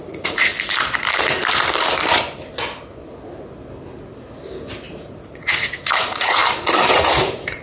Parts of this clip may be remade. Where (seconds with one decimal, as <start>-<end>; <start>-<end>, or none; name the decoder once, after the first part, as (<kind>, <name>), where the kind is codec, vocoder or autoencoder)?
0.0-0.5 (vocoder, Vocos); 4.9-6.4; 6.9-7.6